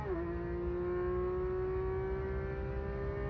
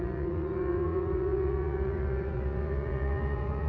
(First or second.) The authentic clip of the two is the first